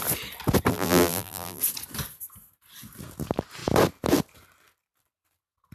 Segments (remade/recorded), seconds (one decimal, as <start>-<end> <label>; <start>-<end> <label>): 0.0-0.7 recorded; 0.7-1.6 remade; 1.6-5.7 recorded